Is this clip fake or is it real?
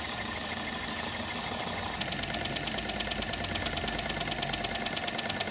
real